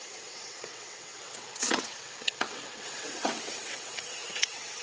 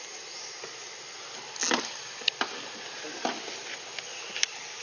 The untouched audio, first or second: second